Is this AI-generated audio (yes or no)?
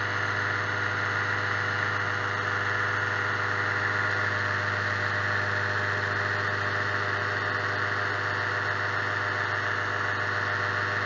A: no